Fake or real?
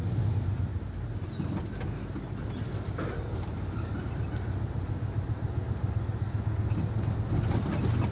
real